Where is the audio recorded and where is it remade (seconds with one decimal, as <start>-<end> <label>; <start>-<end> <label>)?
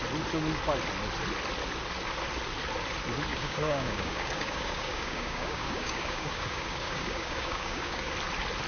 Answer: 0.0-3.3 recorded; 3.3-8.1 remade; 8.1-8.7 recorded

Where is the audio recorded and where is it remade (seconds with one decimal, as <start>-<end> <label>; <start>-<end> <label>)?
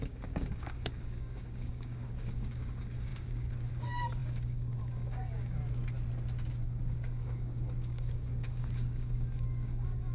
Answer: 0.0-5.6 remade; 5.6-6.6 recorded; 6.6-10.1 remade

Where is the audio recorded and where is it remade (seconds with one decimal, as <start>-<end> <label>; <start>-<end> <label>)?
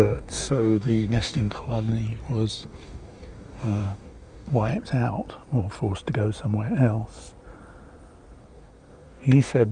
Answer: 0.0-1.9 remade; 1.9-2.5 recorded; 2.5-4.7 remade; 4.7-8.4 recorded; 8.4-9.7 remade